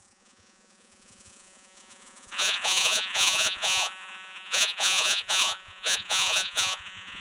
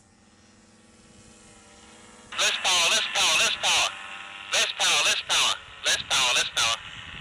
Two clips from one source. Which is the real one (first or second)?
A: second